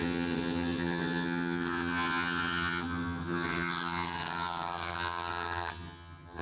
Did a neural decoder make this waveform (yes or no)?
yes